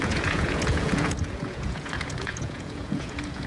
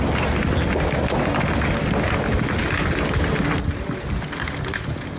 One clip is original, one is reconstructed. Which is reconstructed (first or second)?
first